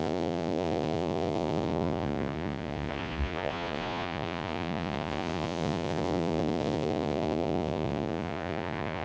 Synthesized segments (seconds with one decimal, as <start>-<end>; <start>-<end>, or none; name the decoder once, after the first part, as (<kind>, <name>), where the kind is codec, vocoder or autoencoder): 0.0-9.0 (vocoder, Vocos)